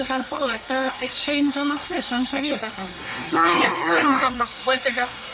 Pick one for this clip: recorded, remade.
remade